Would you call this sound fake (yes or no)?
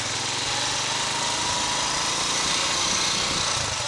no